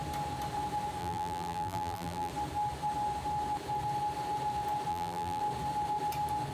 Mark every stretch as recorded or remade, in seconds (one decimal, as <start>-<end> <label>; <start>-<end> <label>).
0.0-1.0 recorded; 1.0-2.3 remade; 2.3-4.9 recorded; 4.9-5.4 remade; 5.4-6.5 recorded